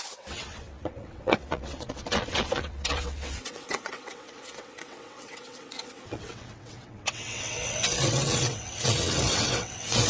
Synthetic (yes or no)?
yes